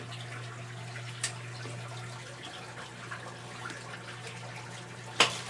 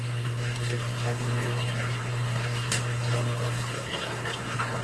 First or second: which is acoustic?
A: first